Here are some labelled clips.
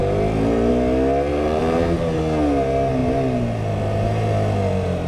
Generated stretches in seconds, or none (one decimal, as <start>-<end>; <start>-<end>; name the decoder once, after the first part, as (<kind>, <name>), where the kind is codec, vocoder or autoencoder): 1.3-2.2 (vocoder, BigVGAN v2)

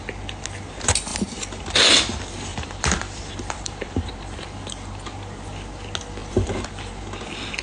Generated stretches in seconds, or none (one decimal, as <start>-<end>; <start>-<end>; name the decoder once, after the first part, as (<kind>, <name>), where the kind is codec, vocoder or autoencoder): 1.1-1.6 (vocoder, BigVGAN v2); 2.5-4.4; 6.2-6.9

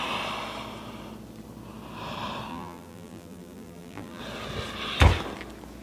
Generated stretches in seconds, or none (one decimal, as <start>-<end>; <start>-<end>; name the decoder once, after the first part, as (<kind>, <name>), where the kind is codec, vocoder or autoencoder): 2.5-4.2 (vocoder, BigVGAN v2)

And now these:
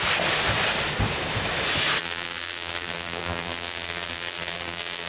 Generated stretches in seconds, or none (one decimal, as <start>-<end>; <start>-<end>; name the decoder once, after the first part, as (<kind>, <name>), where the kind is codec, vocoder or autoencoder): 2.0-5.1 (vocoder, BigVGAN v2)

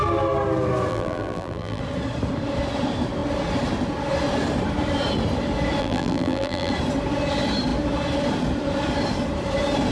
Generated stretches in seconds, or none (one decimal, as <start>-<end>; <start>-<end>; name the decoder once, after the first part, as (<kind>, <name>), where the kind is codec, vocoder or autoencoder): 0.9-1.8 (vocoder, BigVGAN v2); 5.8-6.7

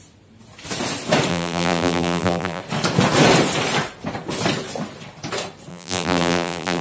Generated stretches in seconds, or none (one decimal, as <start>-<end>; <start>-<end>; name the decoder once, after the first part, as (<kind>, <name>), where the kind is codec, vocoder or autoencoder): 1.3-2.6 (vocoder, BigVGAN v2); 5.7-6.8

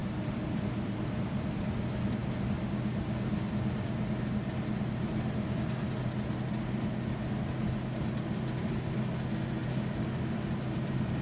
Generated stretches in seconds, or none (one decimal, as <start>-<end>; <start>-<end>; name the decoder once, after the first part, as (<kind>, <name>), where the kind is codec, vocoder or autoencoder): 0.0-1.4 (vocoder, BigVGAN v2); 9.6-11.2